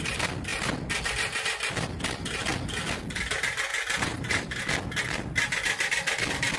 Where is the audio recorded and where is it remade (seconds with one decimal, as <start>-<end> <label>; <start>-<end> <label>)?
0.0-3.7 recorded; 3.7-4.6 remade; 4.6-6.6 recorded